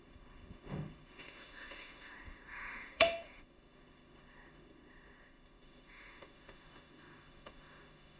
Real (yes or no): no